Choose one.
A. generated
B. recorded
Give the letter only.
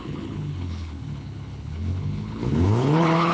A